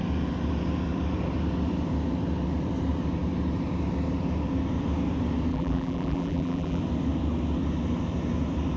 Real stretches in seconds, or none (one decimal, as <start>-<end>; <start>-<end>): 0.0-5.5; 6.8-8.8